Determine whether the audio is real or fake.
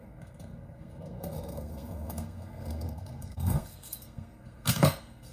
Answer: fake